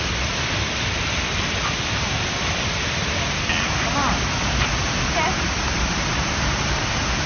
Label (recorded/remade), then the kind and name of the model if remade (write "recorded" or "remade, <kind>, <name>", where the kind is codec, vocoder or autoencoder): remade, vocoder, BigVGAN v2